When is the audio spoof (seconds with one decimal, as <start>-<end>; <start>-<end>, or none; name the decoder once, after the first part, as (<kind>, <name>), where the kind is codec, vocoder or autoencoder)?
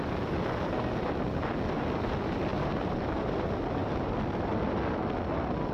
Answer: none